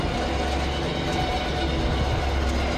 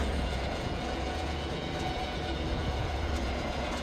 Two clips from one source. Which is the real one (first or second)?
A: first